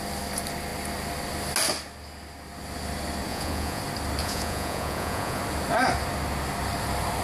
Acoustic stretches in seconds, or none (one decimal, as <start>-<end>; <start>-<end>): 0.0-3.3; 3.8-4.2; 5.4-7.2